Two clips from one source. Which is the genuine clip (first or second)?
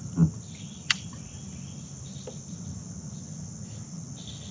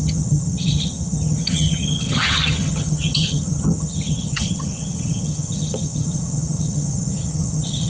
first